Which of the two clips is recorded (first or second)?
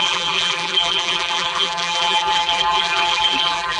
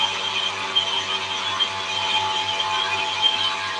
second